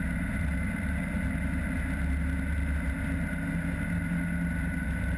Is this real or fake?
real